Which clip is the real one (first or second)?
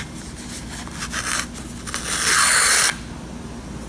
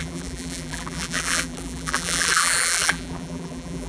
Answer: first